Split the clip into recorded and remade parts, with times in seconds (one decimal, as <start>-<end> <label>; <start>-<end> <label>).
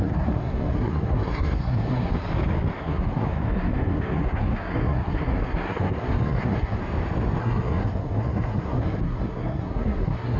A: 0.0-2.1 remade; 2.1-2.8 recorded; 2.8-6.8 remade; 6.8-7.4 recorded; 7.4-10.4 remade